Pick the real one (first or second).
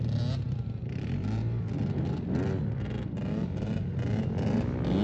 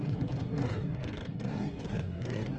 first